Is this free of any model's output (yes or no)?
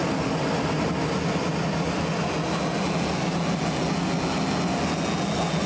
yes